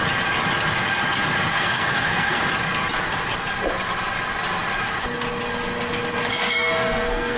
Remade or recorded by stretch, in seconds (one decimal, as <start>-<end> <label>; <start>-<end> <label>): 0.0-1.5 recorded; 1.5-2.4 remade; 2.4-6.3 recorded; 6.3-7.4 remade